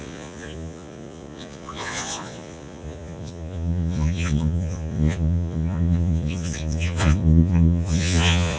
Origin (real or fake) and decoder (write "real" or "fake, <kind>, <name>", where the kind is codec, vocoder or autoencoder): fake, vocoder, Vocos